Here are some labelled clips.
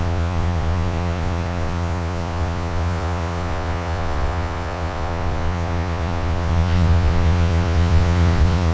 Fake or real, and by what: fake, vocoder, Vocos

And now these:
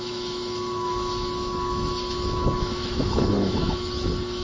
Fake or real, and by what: fake, autoencoder, DAC-VAE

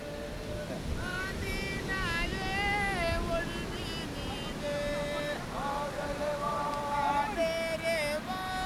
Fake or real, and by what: real